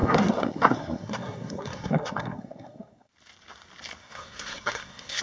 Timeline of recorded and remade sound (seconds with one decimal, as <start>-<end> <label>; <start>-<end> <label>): 0.0-3.1 remade; 3.1-4.0 recorded; 4.0-5.2 remade